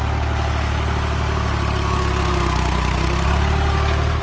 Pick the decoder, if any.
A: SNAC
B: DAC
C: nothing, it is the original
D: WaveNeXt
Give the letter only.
C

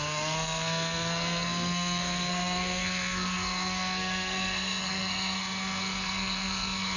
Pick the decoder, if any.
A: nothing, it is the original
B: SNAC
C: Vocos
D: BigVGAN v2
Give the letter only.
B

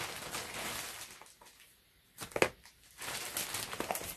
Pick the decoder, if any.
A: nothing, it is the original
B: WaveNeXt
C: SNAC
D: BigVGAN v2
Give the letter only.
A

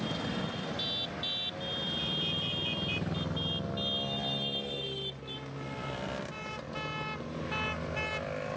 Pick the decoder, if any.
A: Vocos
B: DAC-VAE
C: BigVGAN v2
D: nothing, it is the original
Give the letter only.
D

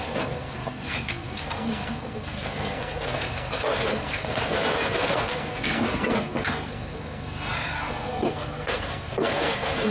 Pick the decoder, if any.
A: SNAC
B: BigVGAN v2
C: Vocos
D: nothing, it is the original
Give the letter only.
A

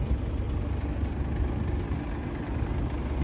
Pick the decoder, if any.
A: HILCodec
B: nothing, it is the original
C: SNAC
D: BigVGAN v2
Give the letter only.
B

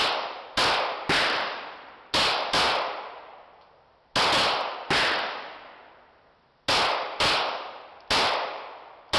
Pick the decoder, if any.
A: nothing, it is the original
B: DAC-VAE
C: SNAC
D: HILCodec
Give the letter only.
A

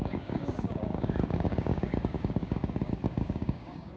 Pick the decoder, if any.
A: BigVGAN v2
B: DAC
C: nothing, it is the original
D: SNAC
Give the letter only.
B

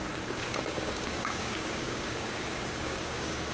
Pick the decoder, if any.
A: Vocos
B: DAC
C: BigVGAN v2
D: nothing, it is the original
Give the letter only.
B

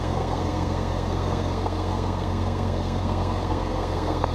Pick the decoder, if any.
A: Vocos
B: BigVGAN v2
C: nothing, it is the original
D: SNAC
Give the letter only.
D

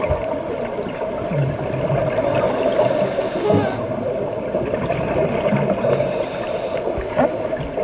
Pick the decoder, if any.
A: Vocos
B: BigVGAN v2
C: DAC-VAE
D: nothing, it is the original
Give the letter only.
D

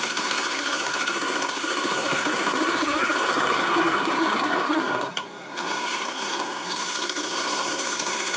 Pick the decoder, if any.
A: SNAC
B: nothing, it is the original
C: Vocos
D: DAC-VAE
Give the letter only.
A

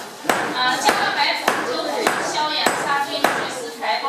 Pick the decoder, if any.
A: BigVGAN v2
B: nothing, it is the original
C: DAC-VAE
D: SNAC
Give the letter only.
B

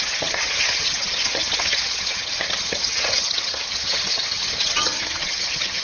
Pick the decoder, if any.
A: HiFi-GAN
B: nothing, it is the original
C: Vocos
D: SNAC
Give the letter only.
A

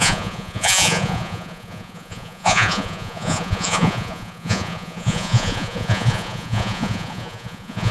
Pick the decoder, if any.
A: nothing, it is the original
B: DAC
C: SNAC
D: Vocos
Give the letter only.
D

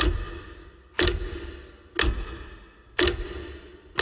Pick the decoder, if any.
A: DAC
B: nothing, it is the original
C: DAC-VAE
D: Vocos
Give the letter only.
B